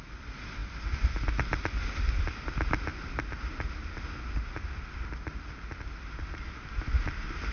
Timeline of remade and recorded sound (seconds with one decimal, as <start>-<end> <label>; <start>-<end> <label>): 0.0-7.5 recorded